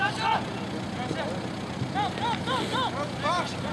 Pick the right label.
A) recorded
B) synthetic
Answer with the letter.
A